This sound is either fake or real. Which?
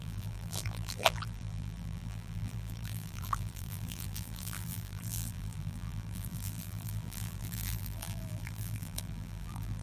fake